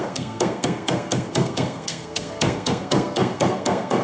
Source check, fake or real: fake